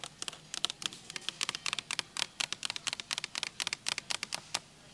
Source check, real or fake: real